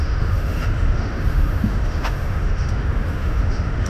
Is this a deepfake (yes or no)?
yes